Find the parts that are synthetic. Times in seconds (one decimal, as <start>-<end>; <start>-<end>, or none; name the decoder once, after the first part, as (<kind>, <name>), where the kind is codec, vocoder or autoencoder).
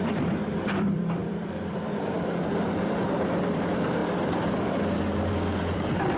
0.0-4.0 (vocoder, BigVGAN v2); 5.3-6.2